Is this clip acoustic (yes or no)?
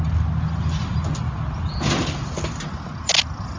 yes